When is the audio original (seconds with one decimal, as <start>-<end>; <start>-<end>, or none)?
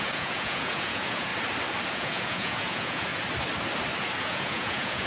1.3-1.9; 3.1-4.2